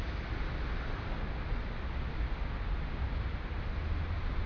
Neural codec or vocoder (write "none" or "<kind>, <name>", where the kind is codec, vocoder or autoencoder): none